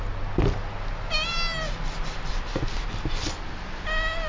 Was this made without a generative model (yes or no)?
yes